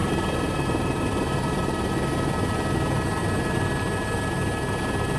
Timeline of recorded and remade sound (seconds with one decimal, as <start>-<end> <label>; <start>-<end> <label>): 0.0-1.9 remade; 1.9-5.2 recorded